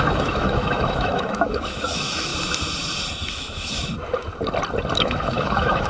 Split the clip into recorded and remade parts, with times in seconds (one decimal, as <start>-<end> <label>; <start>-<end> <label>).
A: 0.0-2.3 remade; 2.3-3.3 recorded; 3.3-3.8 remade; 3.8-5.0 recorded; 5.0-5.9 remade